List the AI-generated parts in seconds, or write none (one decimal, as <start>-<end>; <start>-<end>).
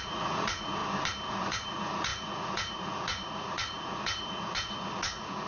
0.0-0.8; 1.3-5.5